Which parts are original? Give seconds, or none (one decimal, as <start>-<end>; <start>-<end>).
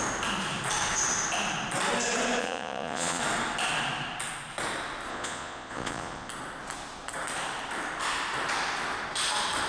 0.0-2.4; 3.2-5.1; 6.3-9.7